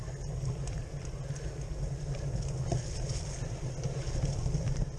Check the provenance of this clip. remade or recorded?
recorded